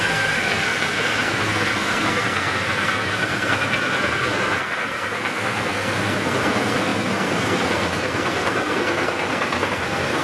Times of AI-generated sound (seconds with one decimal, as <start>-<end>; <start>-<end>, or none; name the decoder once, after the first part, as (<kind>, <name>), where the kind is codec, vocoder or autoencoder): 0.0-10.2 (codec, SNAC)